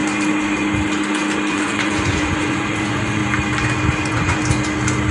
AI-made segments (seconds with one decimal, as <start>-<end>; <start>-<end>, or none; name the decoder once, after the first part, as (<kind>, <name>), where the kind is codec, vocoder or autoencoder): 1.5-3.2 (vocoder, Vocos); 4.0-4.4